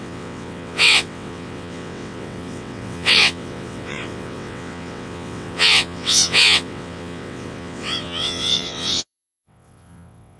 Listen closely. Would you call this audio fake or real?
fake